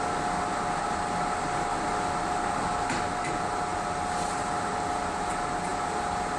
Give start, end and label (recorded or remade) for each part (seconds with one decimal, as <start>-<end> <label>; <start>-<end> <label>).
0.0-6.4 recorded